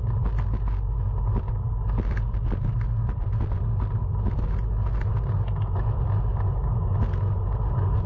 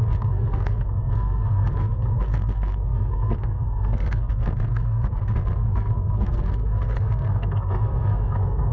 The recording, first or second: first